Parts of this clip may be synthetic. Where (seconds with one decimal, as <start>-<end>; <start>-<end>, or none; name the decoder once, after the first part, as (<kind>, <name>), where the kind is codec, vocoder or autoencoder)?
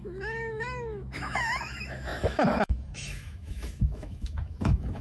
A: 0.0-5.0 (autoencoder, DAC-VAE)